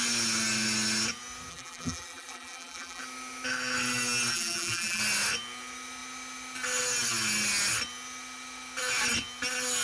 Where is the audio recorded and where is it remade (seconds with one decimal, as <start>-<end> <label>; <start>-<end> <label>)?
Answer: 0.0-1.5 recorded; 1.5-3.0 remade; 3.0-4.3 recorded; 4.3-5.0 remade; 5.0-9.8 recorded